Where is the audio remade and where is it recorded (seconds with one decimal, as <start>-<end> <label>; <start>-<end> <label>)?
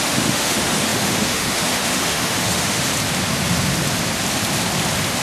0.0-2.9 remade; 2.9-5.2 recorded